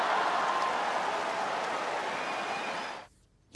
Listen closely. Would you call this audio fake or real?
real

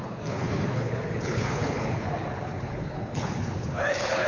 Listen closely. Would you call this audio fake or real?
fake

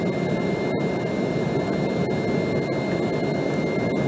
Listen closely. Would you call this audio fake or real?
real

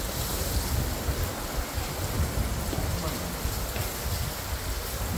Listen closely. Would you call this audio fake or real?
real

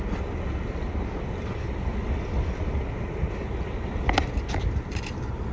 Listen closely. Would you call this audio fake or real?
real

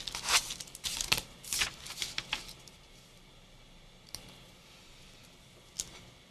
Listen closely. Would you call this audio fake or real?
real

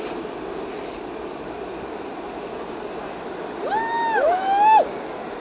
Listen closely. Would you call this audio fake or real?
real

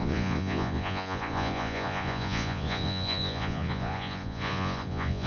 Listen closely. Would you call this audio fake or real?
fake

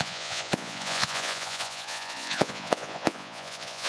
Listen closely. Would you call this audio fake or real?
fake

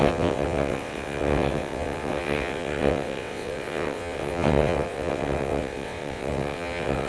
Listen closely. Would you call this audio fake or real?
fake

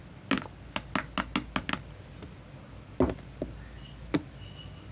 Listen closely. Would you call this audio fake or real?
real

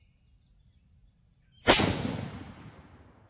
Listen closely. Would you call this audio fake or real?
real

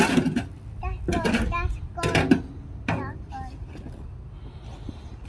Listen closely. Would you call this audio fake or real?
real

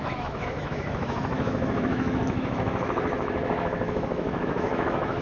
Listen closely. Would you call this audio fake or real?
fake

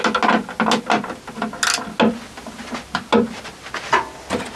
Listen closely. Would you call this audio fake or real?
real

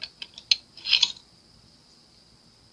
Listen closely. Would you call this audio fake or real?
real